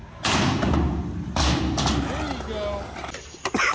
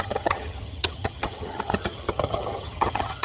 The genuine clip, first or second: first